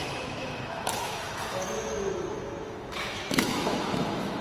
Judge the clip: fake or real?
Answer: fake